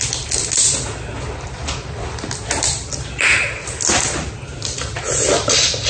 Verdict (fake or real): real